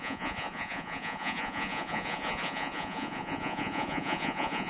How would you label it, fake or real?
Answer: fake